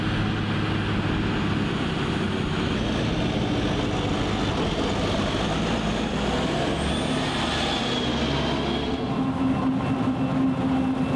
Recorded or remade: recorded